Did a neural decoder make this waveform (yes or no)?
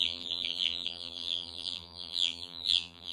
yes